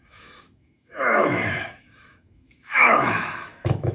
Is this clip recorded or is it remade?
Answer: remade